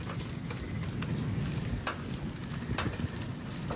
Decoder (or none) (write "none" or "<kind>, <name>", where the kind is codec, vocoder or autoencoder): none